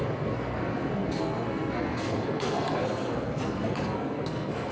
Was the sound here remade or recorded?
remade